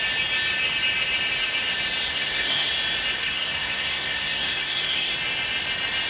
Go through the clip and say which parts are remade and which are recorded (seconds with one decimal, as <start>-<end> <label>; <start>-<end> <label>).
0.0-2.1 recorded; 2.1-2.7 remade; 2.7-3.2 recorded; 3.2-5.1 remade; 5.1-6.1 recorded